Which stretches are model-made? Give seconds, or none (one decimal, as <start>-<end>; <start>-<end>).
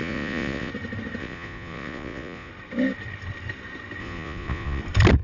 0.0-0.7; 1.2-2.5; 4.0-4.8